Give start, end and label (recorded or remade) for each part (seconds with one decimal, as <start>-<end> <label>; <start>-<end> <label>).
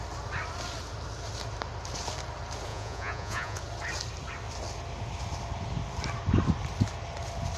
0.0-2.7 recorded; 2.7-3.6 remade; 3.6-7.6 recorded